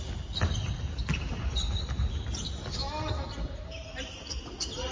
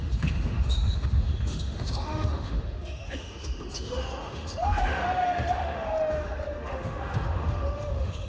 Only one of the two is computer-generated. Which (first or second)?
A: second